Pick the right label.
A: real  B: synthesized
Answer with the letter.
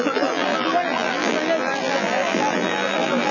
B